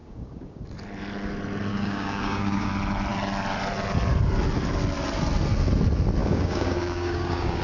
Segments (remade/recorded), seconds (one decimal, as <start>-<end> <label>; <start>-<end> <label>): 0.0-0.6 remade; 0.6-1.7 recorded; 1.7-2.7 remade; 2.7-6.2 recorded; 6.2-7.6 remade